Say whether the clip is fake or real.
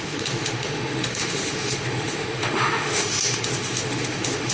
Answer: fake